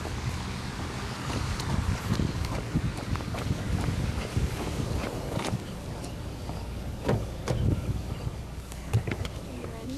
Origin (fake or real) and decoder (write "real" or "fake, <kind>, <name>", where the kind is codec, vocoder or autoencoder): fake, codec, DAC